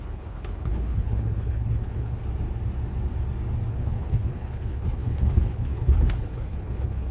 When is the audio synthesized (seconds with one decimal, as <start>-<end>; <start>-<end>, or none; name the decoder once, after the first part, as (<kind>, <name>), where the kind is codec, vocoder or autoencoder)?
0.0-2.2 (codec, HILCodec); 3.7-7.1